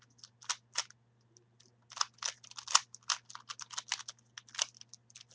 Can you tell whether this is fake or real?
real